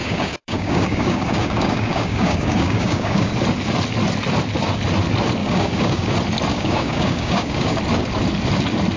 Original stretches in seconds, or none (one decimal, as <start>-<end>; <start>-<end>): 3.3-5.4; 6.1-6.5; 7.8-9.0